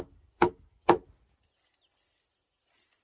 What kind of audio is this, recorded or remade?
recorded